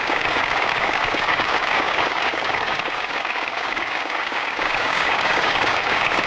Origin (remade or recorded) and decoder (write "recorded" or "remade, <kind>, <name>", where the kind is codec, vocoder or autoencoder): remade, codec, DAC